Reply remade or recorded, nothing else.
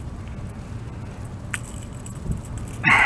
recorded